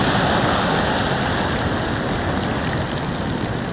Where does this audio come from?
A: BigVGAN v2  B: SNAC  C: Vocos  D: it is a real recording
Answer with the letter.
D